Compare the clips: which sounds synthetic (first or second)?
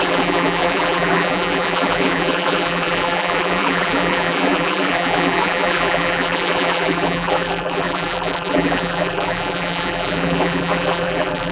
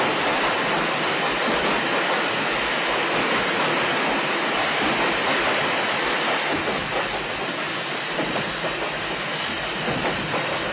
first